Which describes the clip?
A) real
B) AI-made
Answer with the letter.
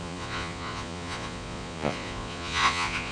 B